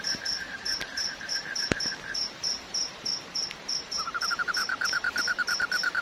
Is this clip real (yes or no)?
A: no